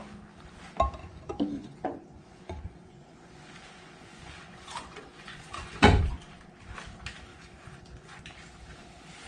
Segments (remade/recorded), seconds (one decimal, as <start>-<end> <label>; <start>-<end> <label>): 0.0-1.0 recorded; 1.0-6.0 remade; 6.0-7.3 recorded; 7.3-8.2 remade; 8.2-9.3 recorded